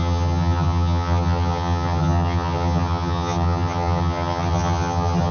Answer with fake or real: fake